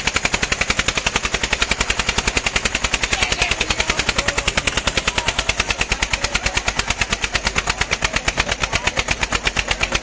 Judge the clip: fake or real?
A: real